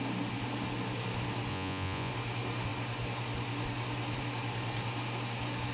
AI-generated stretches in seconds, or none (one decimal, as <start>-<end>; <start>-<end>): 1.5-2.1